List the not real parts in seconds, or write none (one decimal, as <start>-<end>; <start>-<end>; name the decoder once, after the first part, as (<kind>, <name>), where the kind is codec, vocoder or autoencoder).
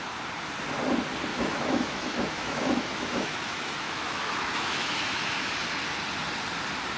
1.3-5.5 (autoencoder, DAC-VAE)